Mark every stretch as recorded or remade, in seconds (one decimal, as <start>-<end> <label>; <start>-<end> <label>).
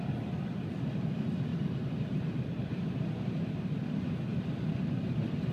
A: 0.0-1.5 recorded; 1.5-3.6 remade; 3.6-4.3 recorded; 4.3-5.5 remade